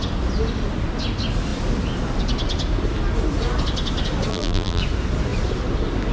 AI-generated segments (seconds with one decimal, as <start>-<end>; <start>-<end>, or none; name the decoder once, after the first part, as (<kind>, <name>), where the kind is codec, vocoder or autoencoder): 4.3-4.8 (vocoder, BigVGAN v2)